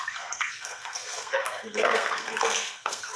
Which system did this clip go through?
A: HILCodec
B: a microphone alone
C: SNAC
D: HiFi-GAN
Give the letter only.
C